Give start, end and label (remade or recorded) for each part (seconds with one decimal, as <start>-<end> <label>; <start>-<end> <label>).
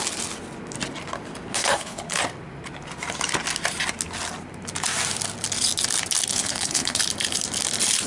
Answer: 0.0-1.5 recorded; 1.5-2.2 remade; 2.2-6.3 recorded; 6.3-7.0 remade; 7.0-8.1 recorded